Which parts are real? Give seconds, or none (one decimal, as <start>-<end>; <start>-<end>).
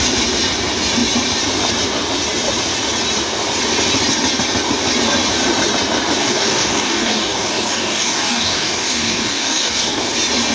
0.0-6.2; 10.0-10.5